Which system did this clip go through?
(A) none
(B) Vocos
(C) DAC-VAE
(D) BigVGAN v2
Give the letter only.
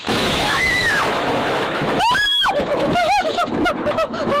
C